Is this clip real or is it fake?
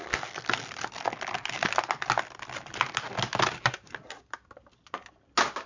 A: real